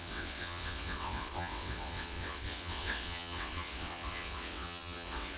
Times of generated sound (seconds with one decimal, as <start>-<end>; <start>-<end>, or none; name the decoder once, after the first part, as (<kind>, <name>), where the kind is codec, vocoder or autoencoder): 0.0-5.4 (vocoder, WaveNeXt)